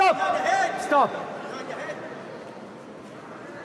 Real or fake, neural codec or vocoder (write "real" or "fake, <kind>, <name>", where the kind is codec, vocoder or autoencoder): real